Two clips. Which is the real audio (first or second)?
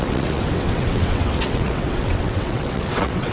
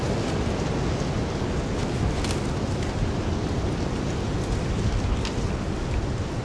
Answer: second